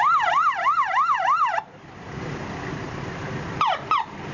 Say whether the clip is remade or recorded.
remade